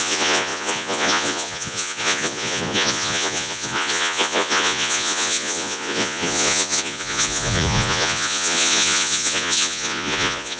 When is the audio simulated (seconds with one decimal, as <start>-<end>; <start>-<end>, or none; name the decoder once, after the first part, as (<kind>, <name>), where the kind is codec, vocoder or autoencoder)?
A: 0.0-10.6 (vocoder, Vocos)